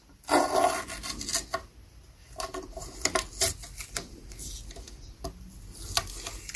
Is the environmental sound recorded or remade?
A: recorded